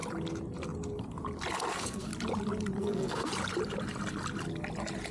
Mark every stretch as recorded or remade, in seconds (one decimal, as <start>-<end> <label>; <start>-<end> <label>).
0.0-1.7 recorded; 1.7-2.1 remade; 2.1-2.8 recorded; 2.8-3.3 remade; 3.3-5.1 recorded